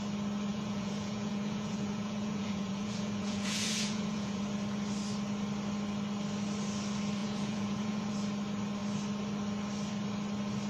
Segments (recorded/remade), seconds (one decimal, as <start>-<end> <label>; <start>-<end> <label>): 0.0-0.5 recorded; 0.5-4.4 remade; 4.4-7.2 recorded; 7.2-8.1 remade; 8.1-10.7 recorded